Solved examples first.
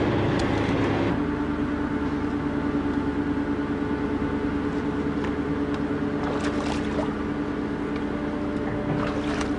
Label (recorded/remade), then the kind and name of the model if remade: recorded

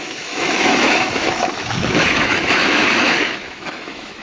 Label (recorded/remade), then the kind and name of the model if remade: remade, autoencoder, DAC-VAE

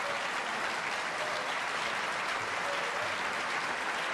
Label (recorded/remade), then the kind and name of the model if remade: recorded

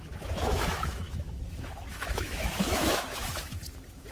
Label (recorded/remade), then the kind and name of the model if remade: remade, autoencoder, DAC-VAE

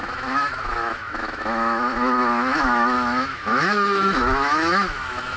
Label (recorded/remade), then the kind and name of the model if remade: remade, autoencoder, DAC-VAE